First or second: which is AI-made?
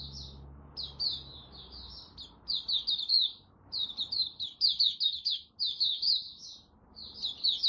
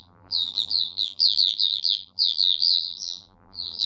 second